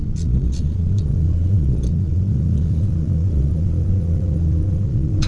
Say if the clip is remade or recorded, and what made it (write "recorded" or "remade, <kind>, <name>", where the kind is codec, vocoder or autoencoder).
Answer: remade, vocoder, Vocos